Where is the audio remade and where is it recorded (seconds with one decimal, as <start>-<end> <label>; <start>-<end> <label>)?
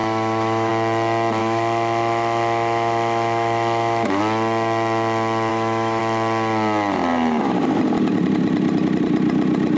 0.0-0.7 remade; 0.7-1.4 recorded; 1.4-4.2 remade; 4.2-5.5 recorded; 5.5-6.0 remade; 6.0-9.8 recorded